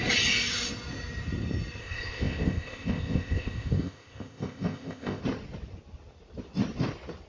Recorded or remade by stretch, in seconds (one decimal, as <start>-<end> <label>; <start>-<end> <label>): 0.0-1.8 recorded; 1.8-5.2 remade; 5.2-7.3 recorded